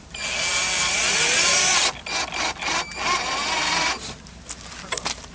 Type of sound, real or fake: real